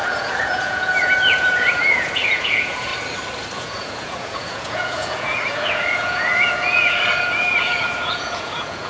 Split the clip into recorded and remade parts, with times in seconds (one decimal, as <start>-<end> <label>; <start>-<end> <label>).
0.0-2.9 remade; 2.9-3.6 recorded; 3.6-8.9 remade